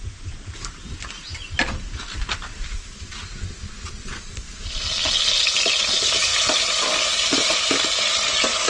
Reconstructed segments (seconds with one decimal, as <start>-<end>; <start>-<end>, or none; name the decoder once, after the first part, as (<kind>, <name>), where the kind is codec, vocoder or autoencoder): none